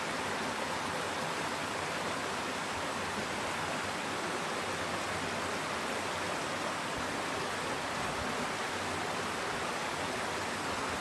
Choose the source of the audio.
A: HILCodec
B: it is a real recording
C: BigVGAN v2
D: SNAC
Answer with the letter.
B